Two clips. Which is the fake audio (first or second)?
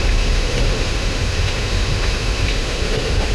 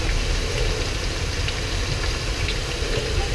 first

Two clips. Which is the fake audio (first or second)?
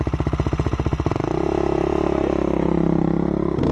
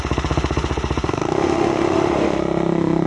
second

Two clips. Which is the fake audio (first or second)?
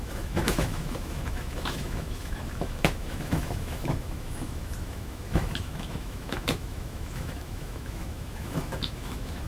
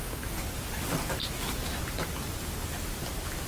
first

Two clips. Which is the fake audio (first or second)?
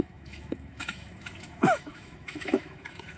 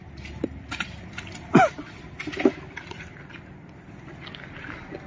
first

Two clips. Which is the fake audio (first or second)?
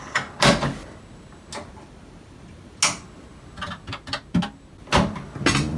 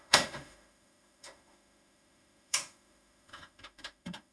second